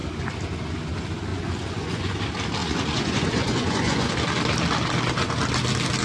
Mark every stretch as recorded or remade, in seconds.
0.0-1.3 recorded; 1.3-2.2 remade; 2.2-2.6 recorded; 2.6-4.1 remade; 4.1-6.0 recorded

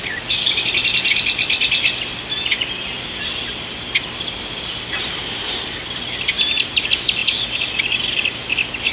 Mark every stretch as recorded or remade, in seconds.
0.0-8.9 recorded

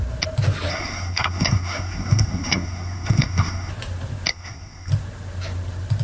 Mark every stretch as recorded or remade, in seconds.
0.0-0.7 recorded; 0.7-3.7 remade; 3.7-4.3 recorded; 4.3-4.9 remade; 4.9-6.0 recorded

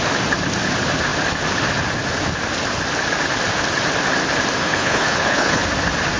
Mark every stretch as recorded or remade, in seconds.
0.0-4.6 recorded; 4.6-5.6 remade; 5.6-6.2 recorded